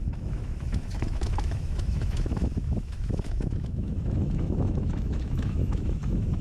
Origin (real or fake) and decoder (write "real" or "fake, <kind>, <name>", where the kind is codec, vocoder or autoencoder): fake, autoencoder, DAC-VAE